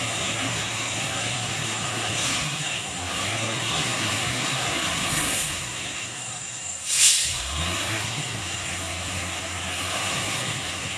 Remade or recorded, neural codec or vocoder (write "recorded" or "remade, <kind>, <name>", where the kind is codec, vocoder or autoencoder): remade, codec, SNAC